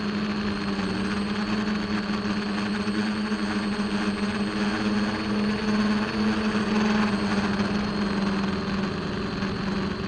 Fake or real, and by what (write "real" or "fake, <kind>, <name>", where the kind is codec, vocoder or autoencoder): real